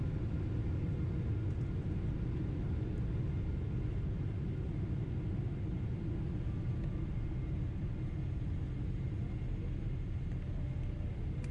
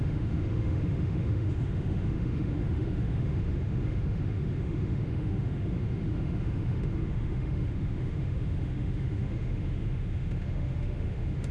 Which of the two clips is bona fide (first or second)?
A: first